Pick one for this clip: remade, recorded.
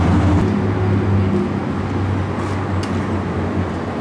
recorded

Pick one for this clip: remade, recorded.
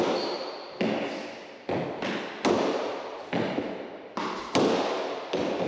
recorded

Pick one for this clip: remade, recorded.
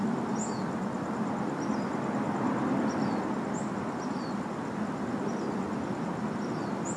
recorded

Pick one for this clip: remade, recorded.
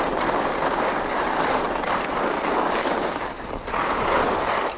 recorded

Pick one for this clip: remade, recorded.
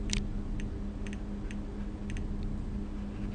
recorded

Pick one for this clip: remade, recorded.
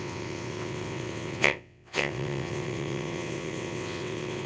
remade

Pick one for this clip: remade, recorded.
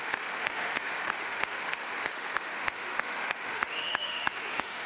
remade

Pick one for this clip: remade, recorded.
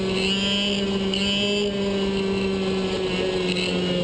recorded